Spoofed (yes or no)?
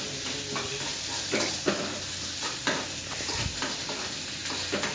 yes